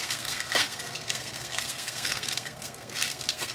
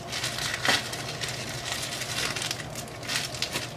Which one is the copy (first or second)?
first